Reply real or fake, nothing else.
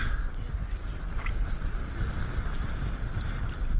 real